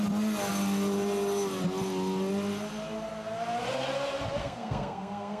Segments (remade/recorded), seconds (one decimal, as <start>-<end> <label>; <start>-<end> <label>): 0.0-4.4 recorded; 4.4-5.4 remade